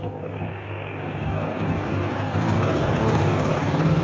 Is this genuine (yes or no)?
no